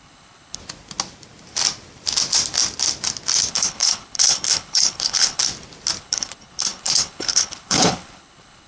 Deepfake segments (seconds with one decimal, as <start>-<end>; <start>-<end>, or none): 0.0-0.6; 3.5-5.4; 6.0-8.7